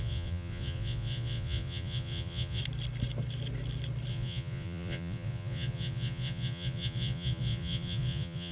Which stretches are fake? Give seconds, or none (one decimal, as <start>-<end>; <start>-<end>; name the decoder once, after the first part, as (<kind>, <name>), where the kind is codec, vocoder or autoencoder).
0.0-2.6 (vocoder, Vocos); 4.1-8.5